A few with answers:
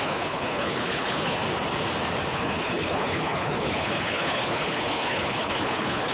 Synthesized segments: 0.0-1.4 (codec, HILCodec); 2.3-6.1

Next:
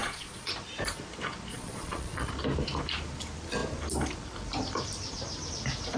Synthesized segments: 0.0-0.5 (vocoder, Vocos); 1.5-2.3

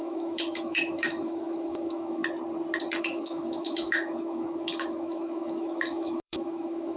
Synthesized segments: 0.0-2.2 (autoencoder, DAC-VAE); 3.0-7.0

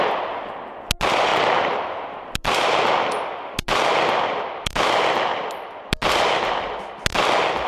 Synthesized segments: 1.3-5.9 (vocoder, BigVGAN v2)

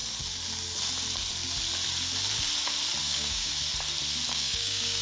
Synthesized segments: 3.0-3.5 (codec, DAC); 4.3-5.0

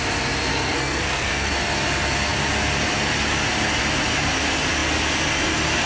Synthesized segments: 0.5-1.5 (codec, SNAC)